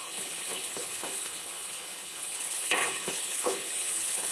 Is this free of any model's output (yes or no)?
no